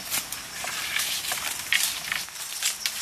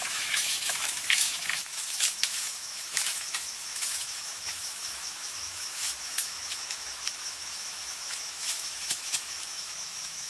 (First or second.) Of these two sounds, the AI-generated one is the second